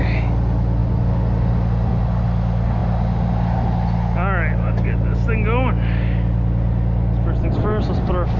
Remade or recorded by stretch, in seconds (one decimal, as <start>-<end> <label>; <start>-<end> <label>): 0.0-8.4 recorded

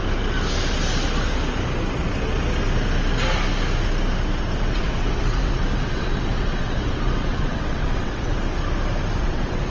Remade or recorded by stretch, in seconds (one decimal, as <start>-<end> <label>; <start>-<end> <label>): 0.0-4.6 recorded; 4.6-8.4 remade; 8.4-9.2 recorded; 9.2-9.7 remade

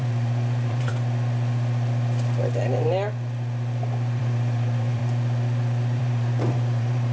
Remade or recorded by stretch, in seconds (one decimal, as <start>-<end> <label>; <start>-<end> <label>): 0.0-0.9 remade; 0.9-4.2 recorded; 4.2-5.0 remade; 5.0-6.0 recorded; 6.0-7.1 remade

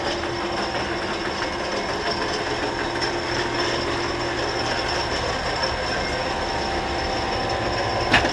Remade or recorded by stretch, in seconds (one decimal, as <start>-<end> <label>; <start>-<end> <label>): 0.0-8.3 recorded